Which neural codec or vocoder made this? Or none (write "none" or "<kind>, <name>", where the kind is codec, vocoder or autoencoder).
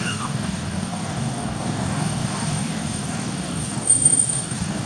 codec, DAC